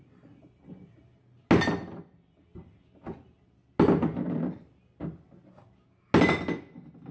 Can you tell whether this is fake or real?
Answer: real